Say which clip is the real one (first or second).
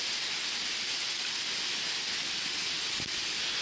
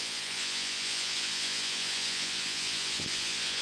first